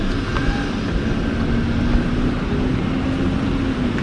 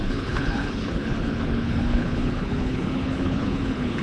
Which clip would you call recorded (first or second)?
first